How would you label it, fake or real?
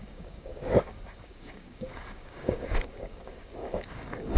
fake